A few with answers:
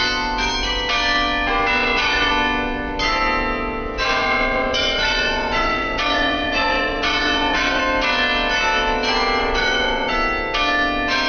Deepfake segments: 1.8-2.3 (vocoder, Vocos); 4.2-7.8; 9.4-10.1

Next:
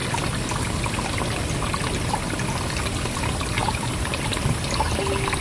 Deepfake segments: none

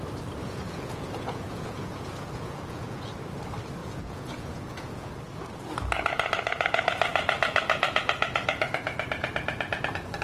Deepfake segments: 0.4-3.1 (vocoder, Vocos); 3.8-5.1

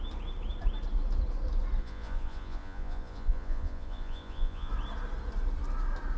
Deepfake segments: 1.8-4.7 (vocoder, Vocos)

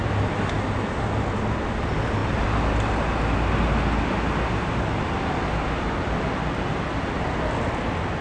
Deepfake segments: none

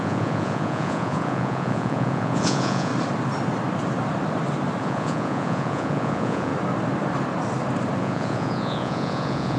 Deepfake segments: 0.0-2.9 (vocoder, Vocos); 4.8-6.5; 8.0-9.6

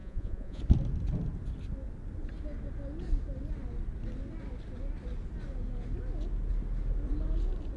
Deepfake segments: 0.0-0.6 (vocoder, Vocos)